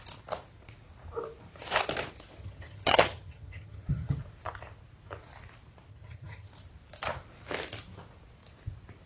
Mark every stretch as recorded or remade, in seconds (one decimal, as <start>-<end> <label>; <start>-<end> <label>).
0.0-2.4 recorded; 2.4-4.2 remade; 4.2-5.9 recorded; 5.9-6.5 remade; 6.5-9.1 recorded